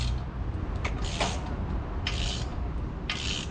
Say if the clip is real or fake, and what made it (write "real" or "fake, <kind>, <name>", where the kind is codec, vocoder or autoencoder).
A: real